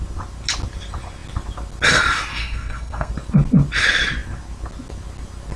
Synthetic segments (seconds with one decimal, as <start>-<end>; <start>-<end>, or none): 2.4-3.1